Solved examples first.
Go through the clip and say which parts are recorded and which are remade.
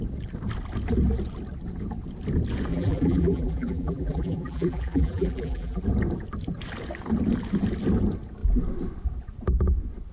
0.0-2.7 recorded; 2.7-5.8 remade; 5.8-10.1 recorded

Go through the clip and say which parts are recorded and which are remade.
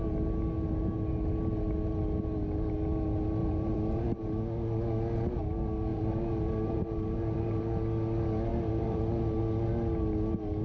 0.0-3.4 recorded; 3.4-4.4 remade; 4.4-5.9 recorded; 5.9-7.6 remade; 7.6-8.5 recorded; 8.5-9.4 remade; 9.4-10.6 recorded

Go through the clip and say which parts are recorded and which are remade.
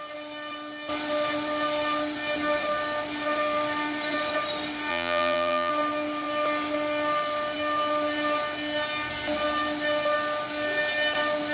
0.0-4.9 recorded; 4.9-5.7 remade; 5.7-11.5 recorded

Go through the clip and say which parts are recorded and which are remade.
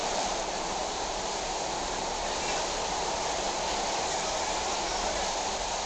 0.0-1.1 remade; 1.1-5.9 recorded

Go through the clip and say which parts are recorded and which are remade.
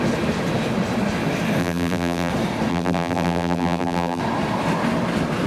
0.0-1.6 recorded; 1.6-2.3 remade; 2.3-2.7 recorded; 2.7-4.2 remade; 4.2-5.5 recorded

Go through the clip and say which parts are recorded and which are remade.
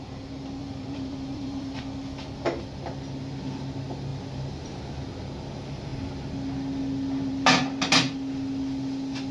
0.0-0.6 recorded; 0.6-1.8 remade; 1.8-4.1 recorded; 4.1-4.8 remade; 4.8-9.3 recorded